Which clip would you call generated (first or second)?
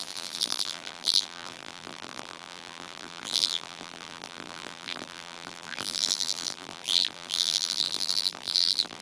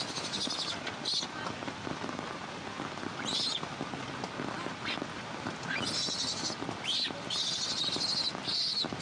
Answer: first